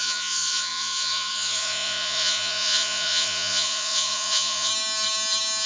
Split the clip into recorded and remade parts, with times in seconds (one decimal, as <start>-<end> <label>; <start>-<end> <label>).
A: 0.0-4.7 remade; 4.7-5.7 recorded